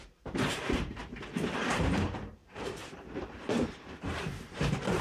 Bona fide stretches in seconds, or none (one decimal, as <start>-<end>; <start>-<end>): none